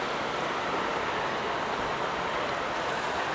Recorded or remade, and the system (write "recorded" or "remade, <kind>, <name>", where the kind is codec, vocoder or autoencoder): recorded